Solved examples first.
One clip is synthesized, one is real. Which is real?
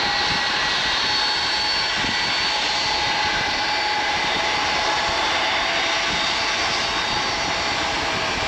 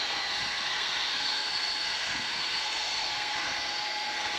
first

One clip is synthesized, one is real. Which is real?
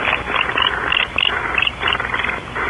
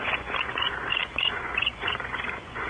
first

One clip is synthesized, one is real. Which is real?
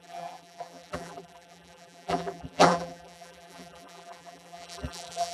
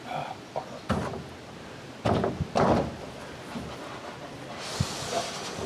second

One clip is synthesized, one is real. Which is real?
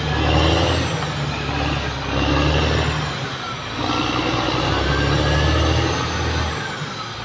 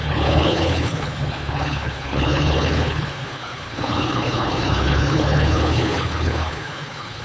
first